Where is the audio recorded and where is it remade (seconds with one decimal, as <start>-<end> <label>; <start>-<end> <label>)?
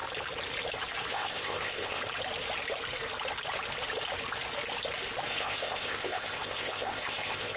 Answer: 0.0-1.1 recorded; 1.1-2.0 remade; 2.0-5.3 recorded; 5.3-7.6 remade